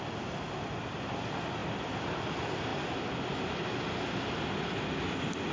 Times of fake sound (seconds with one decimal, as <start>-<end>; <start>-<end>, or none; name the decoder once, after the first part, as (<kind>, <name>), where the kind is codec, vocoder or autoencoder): 1.6-2.1 (vocoder, BigVGAN v2)